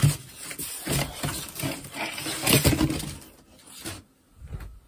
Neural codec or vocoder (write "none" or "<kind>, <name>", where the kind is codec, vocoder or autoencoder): none